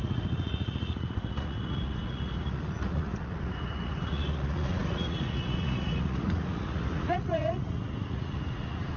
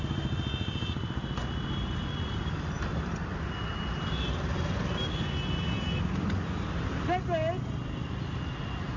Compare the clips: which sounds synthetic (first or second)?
first